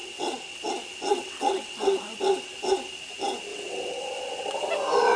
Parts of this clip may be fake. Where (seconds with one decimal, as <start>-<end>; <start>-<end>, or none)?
0.0-0.6; 1.1-2.2; 3.5-4.7